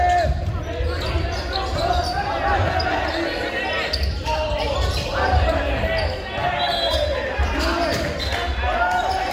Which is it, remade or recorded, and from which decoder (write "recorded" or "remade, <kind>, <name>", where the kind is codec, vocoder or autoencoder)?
recorded